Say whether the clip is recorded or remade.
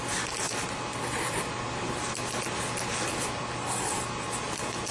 recorded